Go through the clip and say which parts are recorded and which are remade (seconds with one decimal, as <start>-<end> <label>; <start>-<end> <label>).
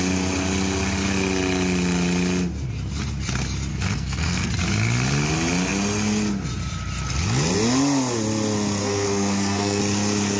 0.0-3.7 recorded; 3.7-4.5 remade; 4.5-8.8 recorded; 8.8-9.8 remade; 9.8-10.4 recorded